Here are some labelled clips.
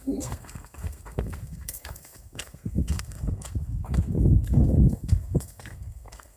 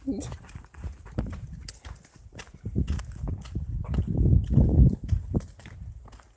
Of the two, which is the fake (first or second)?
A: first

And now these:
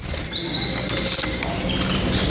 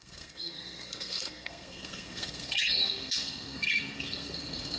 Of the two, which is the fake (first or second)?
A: second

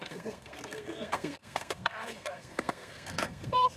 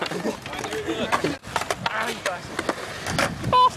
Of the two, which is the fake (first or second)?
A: first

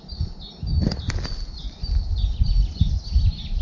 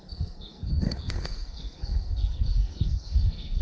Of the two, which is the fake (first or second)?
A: second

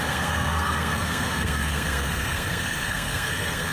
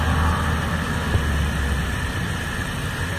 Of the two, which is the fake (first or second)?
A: first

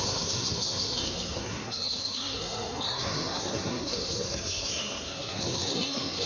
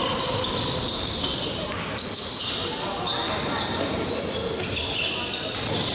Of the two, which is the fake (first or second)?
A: first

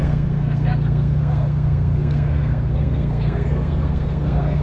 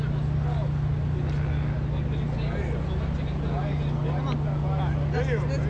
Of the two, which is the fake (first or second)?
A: first